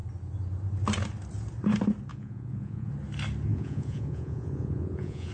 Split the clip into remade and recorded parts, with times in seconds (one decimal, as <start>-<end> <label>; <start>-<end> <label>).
0.0-2.1 recorded; 2.1-2.9 remade; 2.9-3.5 recorded; 3.5-5.3 remade